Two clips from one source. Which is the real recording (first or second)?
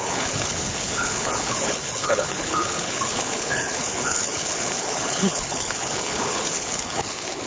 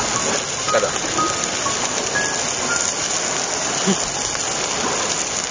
second